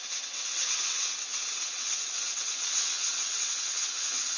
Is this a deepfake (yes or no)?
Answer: yes